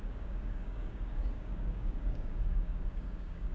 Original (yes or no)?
no